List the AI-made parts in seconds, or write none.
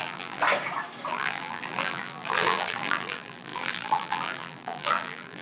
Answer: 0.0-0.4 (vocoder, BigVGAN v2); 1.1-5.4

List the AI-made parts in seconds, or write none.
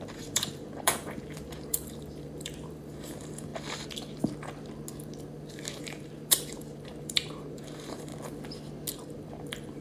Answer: 0.0-3.5 (vocoder, BigVGAN v2); 5.8-8.1; 8.9-9.8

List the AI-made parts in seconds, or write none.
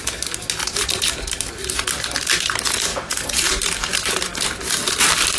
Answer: 2.9-5.4 (vocoder, BigVGAN v2)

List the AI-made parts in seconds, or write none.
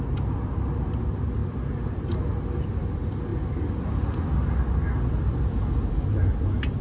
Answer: none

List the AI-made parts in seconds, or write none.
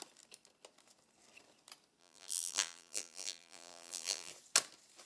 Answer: 2.0-4.3 (vocoder, BigVGAN v2)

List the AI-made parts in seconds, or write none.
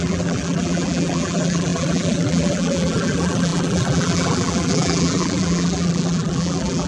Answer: 0.0-6.9 (vocoder, BigVGAN v2)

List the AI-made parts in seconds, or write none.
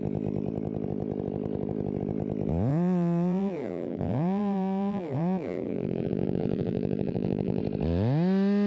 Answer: 2.7-7.6 (vocoder, BigVGAN v2)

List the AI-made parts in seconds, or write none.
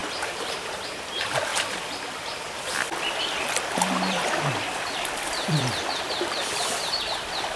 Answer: 0.0-1.1 (vocoder, BigVGAN v2); 1.5-5.8